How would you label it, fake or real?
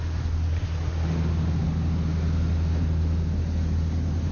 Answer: real